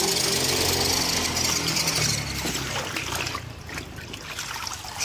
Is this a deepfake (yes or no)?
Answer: no